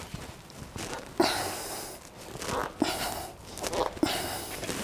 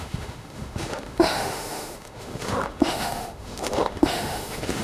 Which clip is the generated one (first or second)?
second